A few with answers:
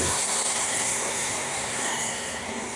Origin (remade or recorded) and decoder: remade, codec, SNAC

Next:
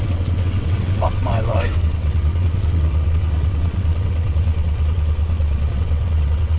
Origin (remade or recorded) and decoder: remade, vocoder, WaveNeXt